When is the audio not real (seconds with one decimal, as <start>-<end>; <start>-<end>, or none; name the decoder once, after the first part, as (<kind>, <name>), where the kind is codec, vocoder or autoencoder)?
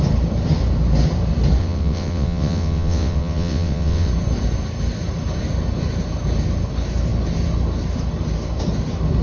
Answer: 1.6-4.1 (vocoder, WaveNeXt)